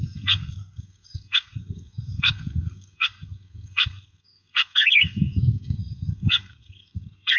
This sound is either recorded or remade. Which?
remade